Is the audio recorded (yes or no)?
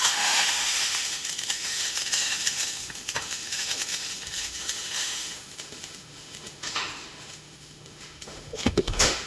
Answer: no